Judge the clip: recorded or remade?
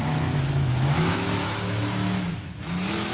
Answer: remade